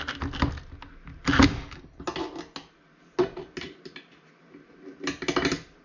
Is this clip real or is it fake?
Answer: real